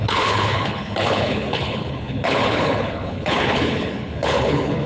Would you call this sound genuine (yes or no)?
no